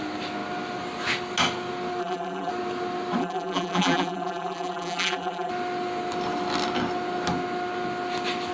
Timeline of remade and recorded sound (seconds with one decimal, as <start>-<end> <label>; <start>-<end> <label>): 0.0-2.0 recorded; 2.0-2.5 remade; 2.5-3.2 recorded; 3.2-5.5 remade; 5.5-8.5 recorded